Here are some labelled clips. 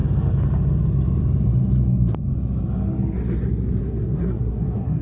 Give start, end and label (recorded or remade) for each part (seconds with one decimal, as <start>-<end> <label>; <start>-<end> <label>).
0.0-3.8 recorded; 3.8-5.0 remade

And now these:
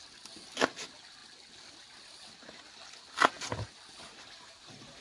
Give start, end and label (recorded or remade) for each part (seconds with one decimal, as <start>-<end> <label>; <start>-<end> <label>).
0.0-5.0 recorded

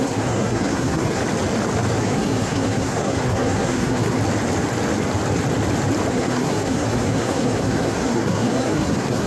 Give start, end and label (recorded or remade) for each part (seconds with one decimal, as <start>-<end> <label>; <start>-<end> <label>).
0.0-1.2 remade; 1.2-2.0 recorded; 2.0-4.2 remade; 4.2-6.1 recorded; 6.1-9.3 remade

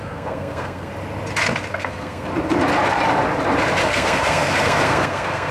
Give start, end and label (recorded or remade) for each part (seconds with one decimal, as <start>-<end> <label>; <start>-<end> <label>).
0.0-0.9 remade; 0.9-1.7 recorded; 1.7-2.3 remade; 2.3-3.8 recorded; 3.8-5.5 remade